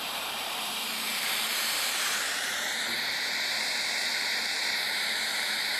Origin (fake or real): fake